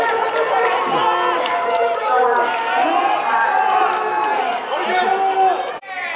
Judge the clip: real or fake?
real